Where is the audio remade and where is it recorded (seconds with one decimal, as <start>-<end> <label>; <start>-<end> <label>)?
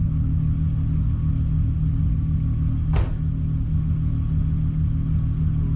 0.0-5.8 recorded